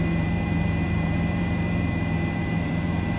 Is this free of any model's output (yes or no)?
no